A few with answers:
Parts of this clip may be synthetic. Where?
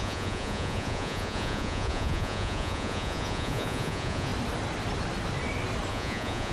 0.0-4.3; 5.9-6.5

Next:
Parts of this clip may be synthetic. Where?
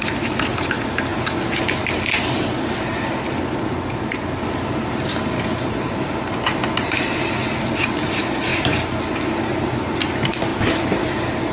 none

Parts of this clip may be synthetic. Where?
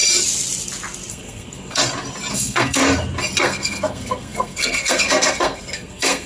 1.1-1.8; 2.3-2.8; 3.4-6.3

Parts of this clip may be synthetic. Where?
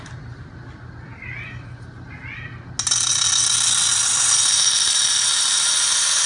none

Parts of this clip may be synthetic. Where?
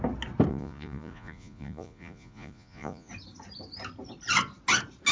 0.5-3.1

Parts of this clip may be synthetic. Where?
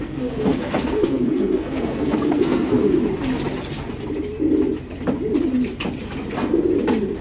0.0-2.8